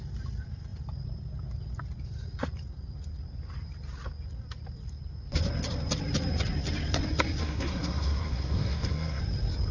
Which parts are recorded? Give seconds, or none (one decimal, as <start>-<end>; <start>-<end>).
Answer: 0.0-7.4; 9.2-9.7